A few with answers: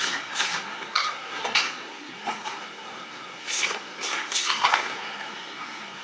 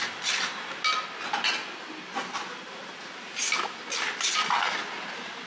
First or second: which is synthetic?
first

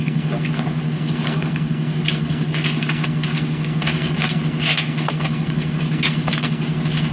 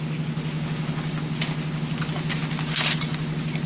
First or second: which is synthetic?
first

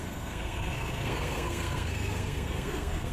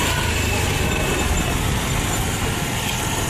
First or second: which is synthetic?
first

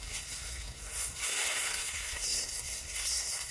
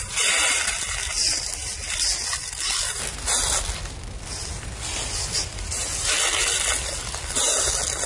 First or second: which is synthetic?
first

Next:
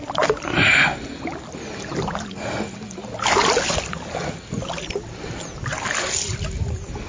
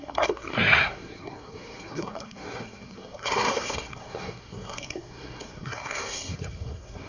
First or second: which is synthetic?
second